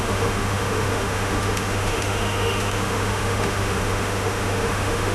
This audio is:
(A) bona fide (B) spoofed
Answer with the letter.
B